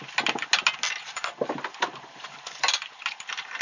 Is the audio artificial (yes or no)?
no